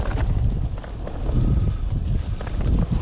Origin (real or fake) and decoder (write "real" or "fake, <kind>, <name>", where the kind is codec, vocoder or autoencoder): real